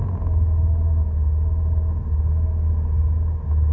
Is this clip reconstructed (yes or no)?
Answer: no